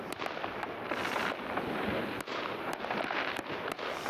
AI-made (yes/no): no